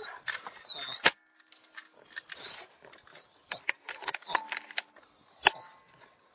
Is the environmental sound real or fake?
real